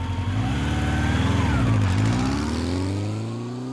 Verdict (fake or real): real